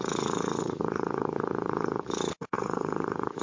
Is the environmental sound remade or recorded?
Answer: remade